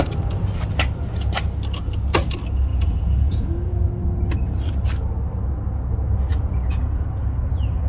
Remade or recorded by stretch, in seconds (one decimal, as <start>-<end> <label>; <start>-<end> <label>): 0.0-2.7 recorded; 2.7-4.2 remade; 4.2-6.3 recorded; 6.3-7.4 remade; 7.4-7.9 recorded